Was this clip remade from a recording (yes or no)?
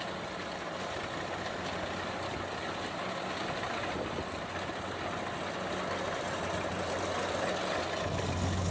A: no